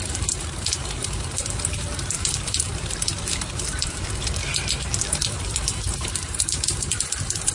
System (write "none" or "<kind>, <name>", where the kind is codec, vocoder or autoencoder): vocoder, BigVGAN v2